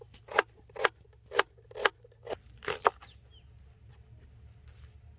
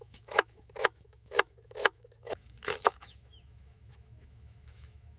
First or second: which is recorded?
first